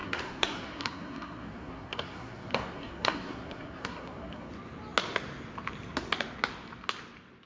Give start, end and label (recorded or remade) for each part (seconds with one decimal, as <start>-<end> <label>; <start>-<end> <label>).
0.0-4.5 remade; 4.5-7.5 recorded